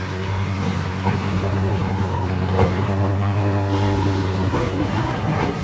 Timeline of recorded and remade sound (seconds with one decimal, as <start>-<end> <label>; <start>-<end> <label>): 0.0-5.6 remade